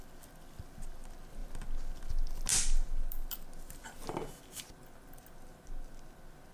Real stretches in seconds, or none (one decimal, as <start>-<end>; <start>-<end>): 0.0-6.5

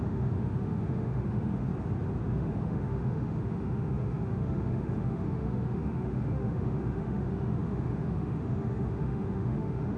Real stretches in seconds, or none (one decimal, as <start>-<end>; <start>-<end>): 1.7-2.2

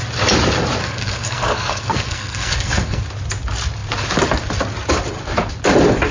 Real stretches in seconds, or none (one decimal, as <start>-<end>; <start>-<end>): 0.0-0.8; 3.0-6.1

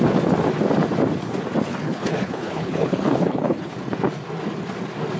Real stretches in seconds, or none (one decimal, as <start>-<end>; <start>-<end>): 0.0-1.7; 3.7-5.2

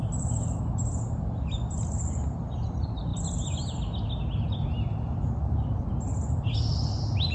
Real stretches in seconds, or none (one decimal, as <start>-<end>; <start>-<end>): 0.0-7.3

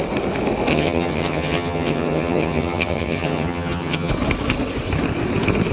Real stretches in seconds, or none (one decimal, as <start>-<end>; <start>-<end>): 0.0-0.7; 4.1-5.7

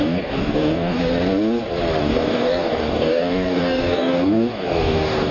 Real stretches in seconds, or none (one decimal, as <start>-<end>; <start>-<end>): 1.1-2.0

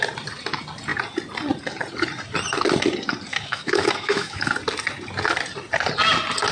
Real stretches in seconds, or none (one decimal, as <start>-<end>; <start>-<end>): 0.0-3.3; 4.4-6.5